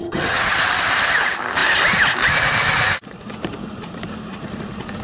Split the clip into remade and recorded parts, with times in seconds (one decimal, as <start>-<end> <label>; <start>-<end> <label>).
0.0-0.6 remade; 0.6-5.0 recorded